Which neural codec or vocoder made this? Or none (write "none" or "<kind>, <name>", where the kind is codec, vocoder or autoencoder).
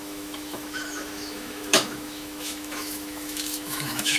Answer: autoencoder, DAC-VAE